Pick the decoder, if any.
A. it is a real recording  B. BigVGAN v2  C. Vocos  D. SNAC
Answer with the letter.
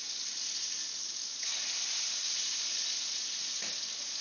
A